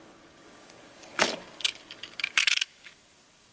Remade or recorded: remade